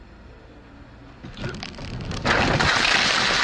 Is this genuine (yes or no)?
yes